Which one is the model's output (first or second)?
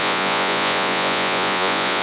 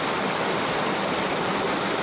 first